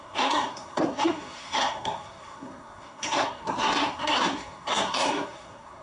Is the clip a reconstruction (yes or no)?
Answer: yes